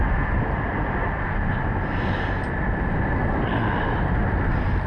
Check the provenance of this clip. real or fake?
real